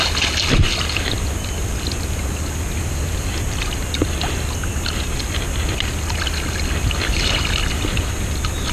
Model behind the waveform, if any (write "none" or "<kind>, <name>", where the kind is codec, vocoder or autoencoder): none